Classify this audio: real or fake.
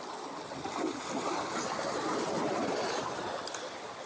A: real